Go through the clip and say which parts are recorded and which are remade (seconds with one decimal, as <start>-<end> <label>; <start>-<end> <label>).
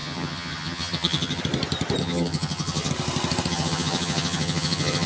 0.0-1.4 remade; 1.4-2.0 recorded; 2.0-2.9 remade; 2.9-3.5 recorded; 3.5-5.1 remade